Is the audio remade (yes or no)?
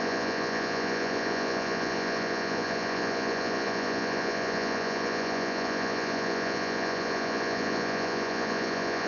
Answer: yes